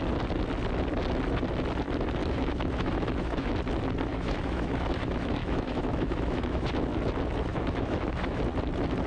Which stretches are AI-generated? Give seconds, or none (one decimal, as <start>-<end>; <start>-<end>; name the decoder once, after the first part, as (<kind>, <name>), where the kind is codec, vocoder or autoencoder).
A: 2.2-3.5 (autoencoder, DAC-VAE); 4.1-6.7; 7.5-8.4